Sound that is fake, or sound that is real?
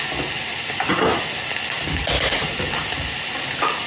real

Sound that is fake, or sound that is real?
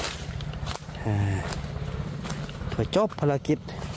real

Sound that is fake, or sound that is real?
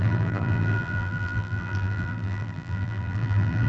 fake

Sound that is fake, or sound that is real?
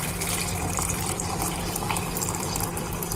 fake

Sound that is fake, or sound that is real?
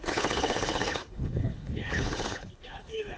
fake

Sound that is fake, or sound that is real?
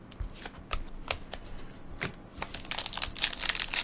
real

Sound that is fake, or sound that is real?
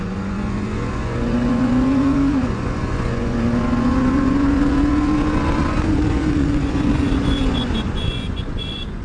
fake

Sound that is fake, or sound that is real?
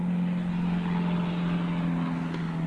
real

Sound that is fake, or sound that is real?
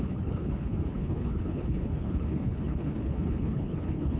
fake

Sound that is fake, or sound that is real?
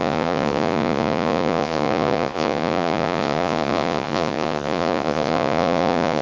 fake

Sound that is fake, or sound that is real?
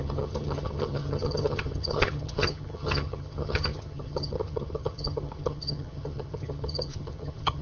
fake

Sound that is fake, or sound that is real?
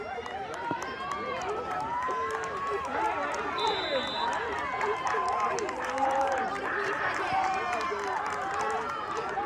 fake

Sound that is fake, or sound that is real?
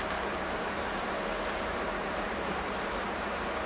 fake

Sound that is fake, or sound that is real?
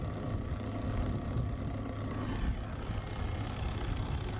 real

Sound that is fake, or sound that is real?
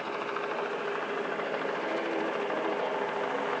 real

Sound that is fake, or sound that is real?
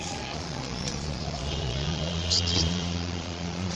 fake